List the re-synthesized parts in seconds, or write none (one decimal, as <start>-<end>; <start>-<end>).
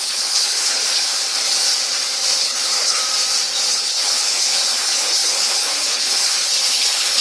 0.0-1.2; 2.4-3.0; 3.7-7.2